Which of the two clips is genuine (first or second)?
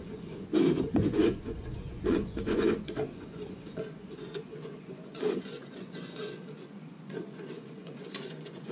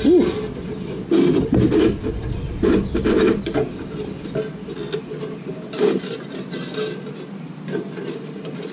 second